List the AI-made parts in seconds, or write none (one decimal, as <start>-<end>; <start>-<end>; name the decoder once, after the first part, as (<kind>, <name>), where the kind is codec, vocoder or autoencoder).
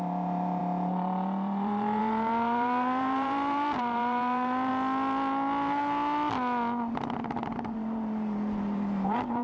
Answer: 0.0-4.7 (vocoder, BigVGAN v2); 7.2-9.4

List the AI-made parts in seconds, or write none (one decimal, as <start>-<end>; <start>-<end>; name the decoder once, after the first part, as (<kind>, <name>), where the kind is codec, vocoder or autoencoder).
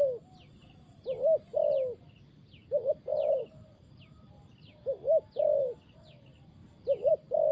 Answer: 3.1-4.0 (vocoder, BigVGAN v2); 6.6-7.1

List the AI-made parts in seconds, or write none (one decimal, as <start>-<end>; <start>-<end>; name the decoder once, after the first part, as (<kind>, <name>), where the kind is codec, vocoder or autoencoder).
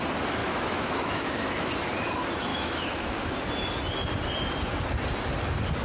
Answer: 0.4-1.7 (autoencoder, DAC-VAE); 2.5-3.3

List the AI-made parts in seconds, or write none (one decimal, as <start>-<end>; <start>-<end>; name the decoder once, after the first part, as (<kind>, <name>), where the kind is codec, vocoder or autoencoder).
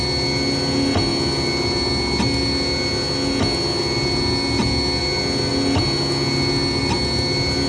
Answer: none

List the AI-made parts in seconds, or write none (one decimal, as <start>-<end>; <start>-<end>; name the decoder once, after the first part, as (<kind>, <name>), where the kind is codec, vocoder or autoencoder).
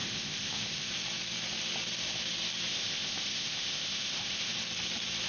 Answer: 0.0-0.9 (codec, ZipCodec); 2.7-4.5